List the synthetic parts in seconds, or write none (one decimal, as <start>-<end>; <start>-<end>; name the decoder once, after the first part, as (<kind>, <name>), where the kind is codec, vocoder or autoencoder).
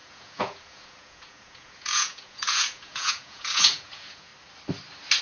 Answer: 0.0-4.3 (vocoder, Vocos)